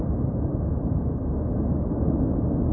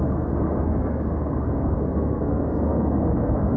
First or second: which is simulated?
second